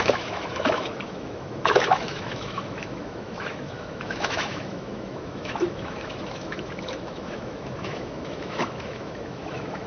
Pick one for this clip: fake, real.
fake